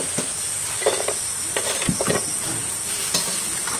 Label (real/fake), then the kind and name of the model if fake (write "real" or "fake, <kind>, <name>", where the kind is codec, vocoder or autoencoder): real